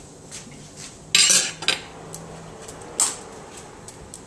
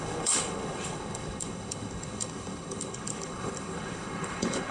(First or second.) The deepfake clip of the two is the second